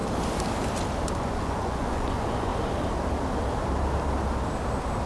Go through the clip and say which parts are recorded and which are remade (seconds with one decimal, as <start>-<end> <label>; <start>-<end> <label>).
0.0-1.1 recorded; 1.1-2.5 remade; 2.5-5.1 recorded